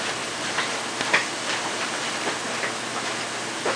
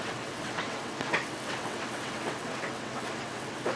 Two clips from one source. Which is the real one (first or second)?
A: first